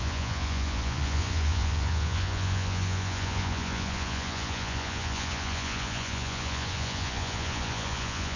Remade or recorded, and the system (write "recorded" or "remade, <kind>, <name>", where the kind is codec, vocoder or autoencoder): remade, vocoder, Vocos